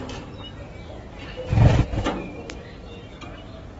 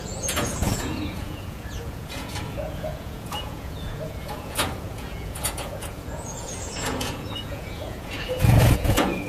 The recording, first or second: first